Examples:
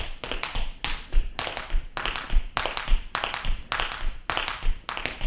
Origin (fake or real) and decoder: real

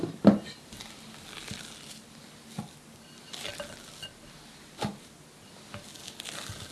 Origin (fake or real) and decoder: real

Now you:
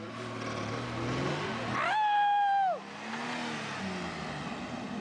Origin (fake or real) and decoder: real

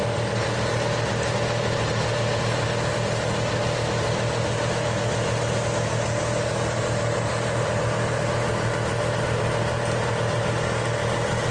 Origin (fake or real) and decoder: real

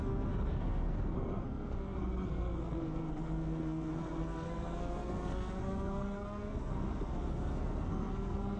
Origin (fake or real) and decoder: fake, codec, SNAC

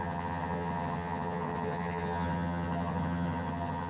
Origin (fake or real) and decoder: fake, vocoder, HiFi-GAN